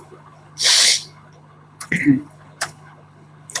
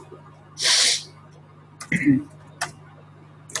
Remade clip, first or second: first